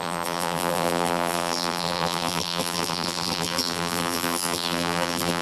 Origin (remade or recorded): remade